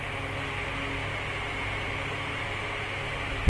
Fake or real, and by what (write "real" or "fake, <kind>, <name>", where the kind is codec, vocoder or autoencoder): real